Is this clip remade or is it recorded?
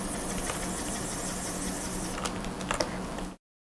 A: recorded